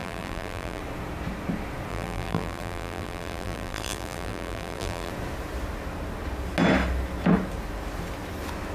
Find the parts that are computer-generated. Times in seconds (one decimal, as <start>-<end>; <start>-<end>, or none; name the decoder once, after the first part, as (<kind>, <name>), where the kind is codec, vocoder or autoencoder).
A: 0.0-0.8 (vocoder, BigVGAN v2); 1.9-5.1

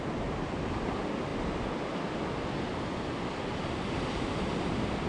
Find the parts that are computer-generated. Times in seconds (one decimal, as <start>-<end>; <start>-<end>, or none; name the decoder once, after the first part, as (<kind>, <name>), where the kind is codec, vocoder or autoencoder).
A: none

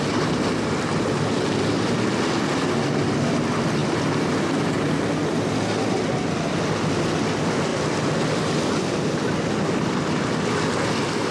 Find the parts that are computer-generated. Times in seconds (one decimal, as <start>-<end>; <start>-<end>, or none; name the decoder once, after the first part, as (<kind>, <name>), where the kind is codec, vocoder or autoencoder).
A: 3.8-5.0 (vocoder, BigVGAN v2)